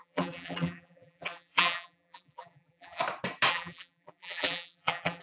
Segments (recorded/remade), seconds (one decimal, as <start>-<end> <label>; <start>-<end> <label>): 0.0-3.0 remade; 3.0-3.5 recorded; 3.5-5.2 remade